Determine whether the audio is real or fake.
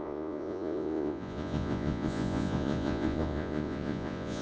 fake